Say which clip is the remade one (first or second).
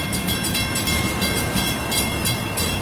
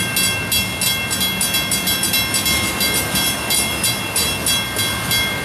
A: first